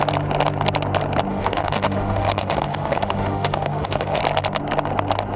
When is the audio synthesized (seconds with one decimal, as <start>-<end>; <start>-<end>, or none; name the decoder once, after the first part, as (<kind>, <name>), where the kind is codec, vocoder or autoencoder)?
1.3-4.2 (autoencoder, DAC-VAE)